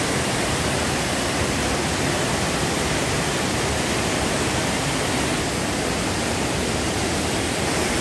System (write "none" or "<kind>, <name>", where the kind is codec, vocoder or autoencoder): none